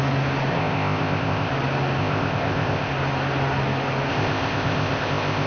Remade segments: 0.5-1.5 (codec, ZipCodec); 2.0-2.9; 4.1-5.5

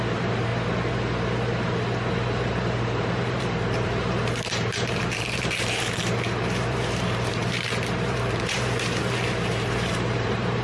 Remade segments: 0.0-0.5 (vocoder, BigVGAN v2); 2.1-10.6

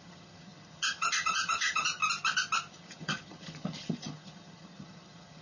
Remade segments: 0.0-2.0 (vocoder, HiFi-GAN); 2.7-5.4

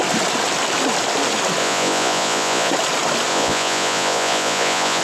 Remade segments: 1.6-2.7 (vocoder, Vocos); 3.3-5.0

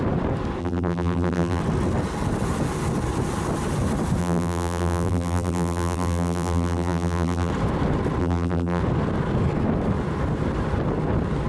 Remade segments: 0.6-1.6 (vocoder, BigVGAN v2); 4.2-7.5; 8.2-8.8

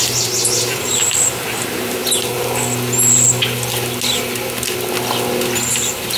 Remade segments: 0.0-2.0 (vocoder, BigVGAN v2); 5.7-6.2